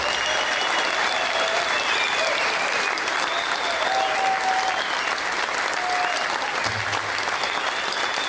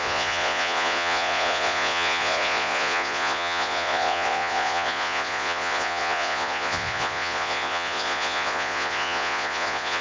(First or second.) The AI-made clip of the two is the second